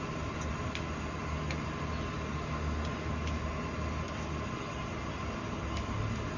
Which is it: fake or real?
real